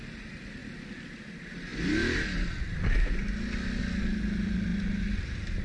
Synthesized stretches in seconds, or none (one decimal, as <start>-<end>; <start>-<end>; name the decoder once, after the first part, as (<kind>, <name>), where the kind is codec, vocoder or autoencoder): none